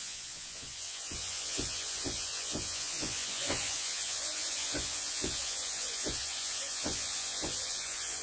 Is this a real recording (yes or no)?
no